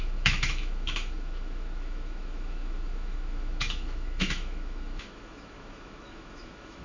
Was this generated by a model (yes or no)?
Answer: yes